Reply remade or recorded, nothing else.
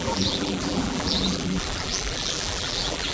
remade